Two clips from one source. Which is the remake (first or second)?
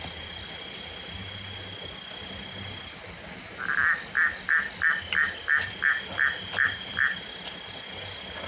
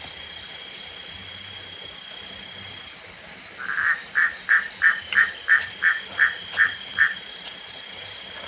second